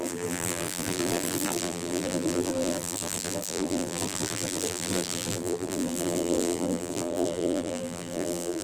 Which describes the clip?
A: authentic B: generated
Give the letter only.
B